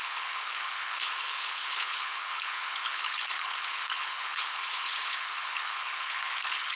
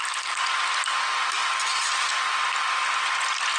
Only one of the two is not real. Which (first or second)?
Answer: first